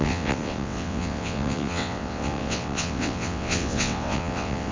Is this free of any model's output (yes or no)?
no